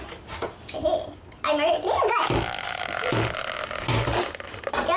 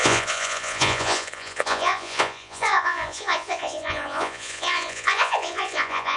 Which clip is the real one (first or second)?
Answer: first